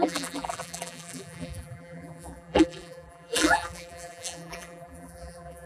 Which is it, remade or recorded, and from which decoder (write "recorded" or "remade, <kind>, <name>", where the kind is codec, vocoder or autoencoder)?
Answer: remade, vocoder, BigVGAN v2